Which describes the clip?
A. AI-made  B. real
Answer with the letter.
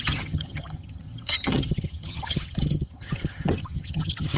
A